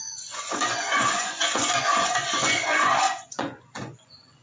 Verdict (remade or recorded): remade